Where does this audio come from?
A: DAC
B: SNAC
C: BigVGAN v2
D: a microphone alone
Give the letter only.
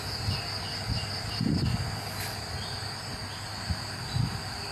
D